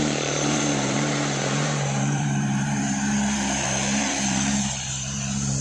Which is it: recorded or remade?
remade